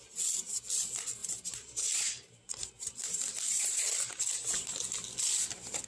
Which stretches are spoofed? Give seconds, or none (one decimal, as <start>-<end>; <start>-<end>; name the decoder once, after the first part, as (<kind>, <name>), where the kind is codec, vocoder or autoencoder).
1.2-4.7 (vocoder, BigVGAN v2)